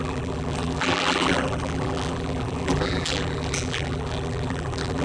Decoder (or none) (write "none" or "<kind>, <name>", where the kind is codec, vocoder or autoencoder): vocoder, BigVGAN v2